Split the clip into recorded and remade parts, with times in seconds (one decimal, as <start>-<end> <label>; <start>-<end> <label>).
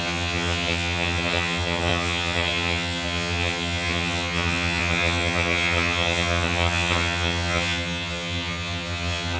0.0-9.4 remade